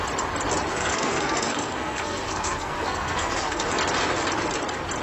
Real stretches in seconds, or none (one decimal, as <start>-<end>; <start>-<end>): 0.0-0.7; 3.7-5.0